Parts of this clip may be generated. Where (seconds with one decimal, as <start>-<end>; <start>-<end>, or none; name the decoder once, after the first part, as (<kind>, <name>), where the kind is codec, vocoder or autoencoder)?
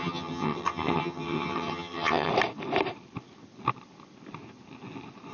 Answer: 0.0-2.3 (vocoder, HiFi-GAN)